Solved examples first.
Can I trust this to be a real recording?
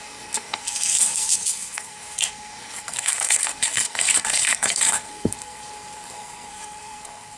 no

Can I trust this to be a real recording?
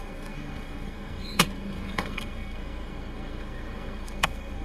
no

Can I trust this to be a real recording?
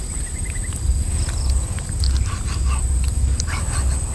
yes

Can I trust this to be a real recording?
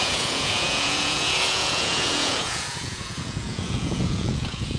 no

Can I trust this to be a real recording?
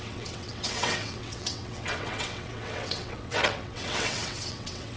no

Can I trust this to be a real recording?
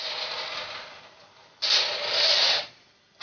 yes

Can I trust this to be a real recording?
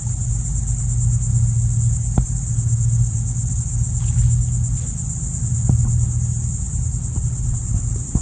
yes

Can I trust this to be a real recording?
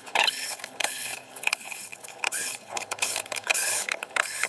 no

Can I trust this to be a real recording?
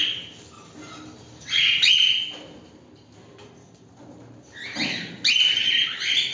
yes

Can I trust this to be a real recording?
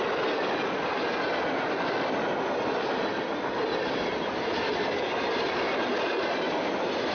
yes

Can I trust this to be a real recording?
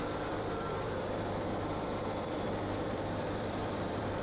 no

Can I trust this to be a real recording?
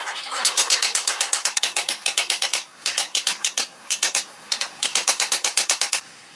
no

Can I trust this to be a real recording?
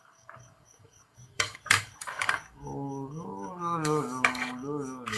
no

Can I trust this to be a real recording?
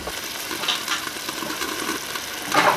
no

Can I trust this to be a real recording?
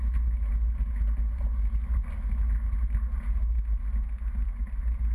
yes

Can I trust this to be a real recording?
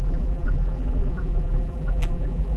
no